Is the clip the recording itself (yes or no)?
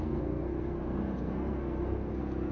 no